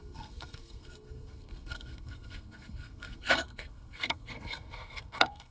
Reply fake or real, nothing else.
fake